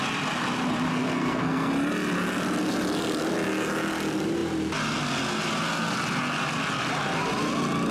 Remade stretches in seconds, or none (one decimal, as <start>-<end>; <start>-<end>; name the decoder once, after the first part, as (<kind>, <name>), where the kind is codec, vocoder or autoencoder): 0.9-1.7 (codec, SNAC)